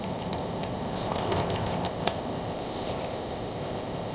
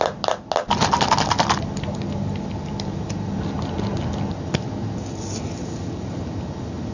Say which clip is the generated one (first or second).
first